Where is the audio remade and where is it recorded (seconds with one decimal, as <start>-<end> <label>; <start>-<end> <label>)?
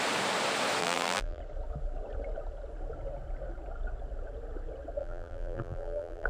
0.0-0.8 recorded; 0.8-1.4 remade; 1.4-5.0 recorded; 5.0-6.3 remade